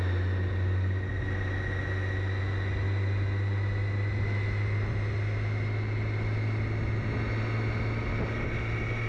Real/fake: real